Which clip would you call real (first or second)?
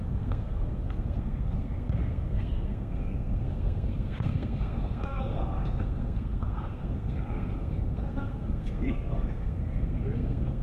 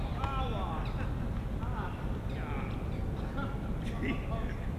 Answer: second